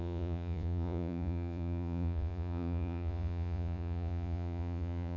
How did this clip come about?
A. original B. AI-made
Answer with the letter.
B